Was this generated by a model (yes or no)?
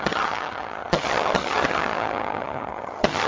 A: yes